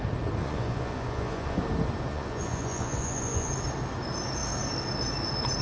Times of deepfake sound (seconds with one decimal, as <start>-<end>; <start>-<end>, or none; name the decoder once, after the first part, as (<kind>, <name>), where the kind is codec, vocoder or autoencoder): 0.4-1.6 (vocoder, Vocos); 2.1-3.5